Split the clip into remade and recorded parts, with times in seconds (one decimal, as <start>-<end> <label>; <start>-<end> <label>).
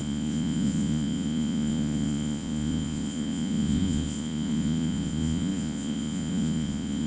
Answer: 0.0-7.1 remade